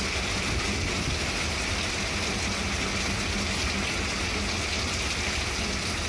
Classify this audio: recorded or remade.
recorded